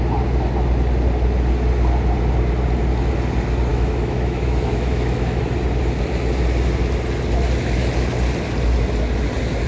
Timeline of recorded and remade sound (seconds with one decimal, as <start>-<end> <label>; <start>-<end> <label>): 0.0-3.7 recorded; 3.7-5.4 remade; 5.4-9.7 recorded